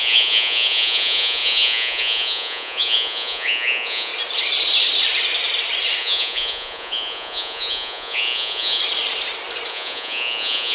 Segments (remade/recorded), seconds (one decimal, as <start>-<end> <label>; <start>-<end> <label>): 0.0-4.1 remade; 4.1-6.0 recorded; 6.0-8.8 remade; 8.8-9.7 recorded; 9.7-10.7 remade